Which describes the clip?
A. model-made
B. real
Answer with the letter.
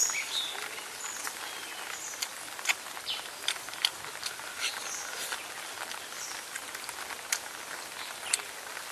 B